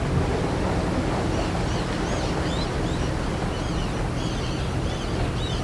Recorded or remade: recorded